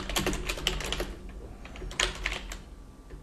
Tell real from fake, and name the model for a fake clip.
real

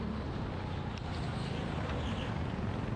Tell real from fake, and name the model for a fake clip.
real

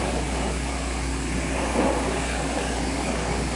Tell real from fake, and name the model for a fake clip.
fake, codec, DAC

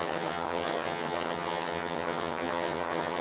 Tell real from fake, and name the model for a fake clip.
fake, vocoder, HiFi-GAN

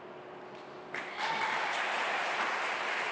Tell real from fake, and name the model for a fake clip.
real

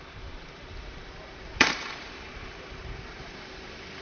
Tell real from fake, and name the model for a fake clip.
fake, vocoder, BigVGAN v2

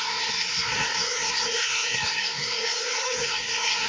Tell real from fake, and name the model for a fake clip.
fake, codec, SNAC